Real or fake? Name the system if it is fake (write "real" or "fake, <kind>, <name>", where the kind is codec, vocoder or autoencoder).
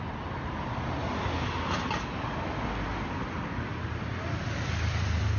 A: real